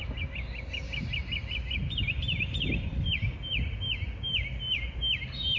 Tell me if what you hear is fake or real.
real